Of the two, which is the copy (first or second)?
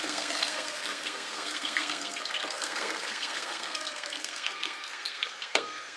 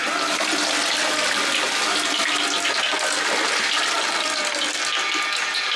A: first